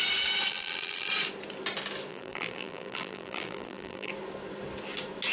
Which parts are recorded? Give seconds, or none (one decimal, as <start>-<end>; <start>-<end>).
0.0-0.5; 1.1-2.1; 4.1-5.3